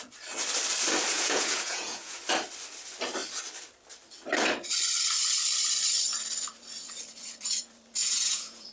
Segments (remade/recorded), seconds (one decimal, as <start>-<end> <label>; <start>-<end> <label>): 0.0-1.1 recorded; 1.1-2.2 remade; 2.2-8.0 recorded; 8.0-8.7 remade